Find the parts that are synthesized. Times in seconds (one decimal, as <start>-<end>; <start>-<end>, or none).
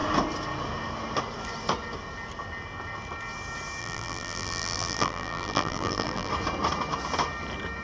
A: 3.8-6.3